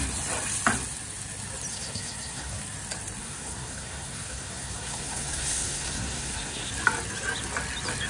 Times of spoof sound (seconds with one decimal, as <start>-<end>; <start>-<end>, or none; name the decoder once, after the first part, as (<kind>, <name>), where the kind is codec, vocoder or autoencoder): 1.7-2.6 (codec, SNAC); 3.2-6.7